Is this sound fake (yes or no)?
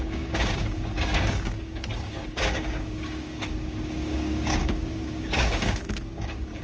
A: yes